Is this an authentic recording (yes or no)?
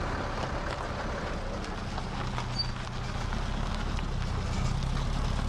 yes